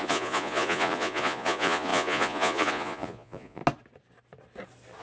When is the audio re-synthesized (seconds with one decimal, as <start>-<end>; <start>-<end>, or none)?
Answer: 0.0-3.6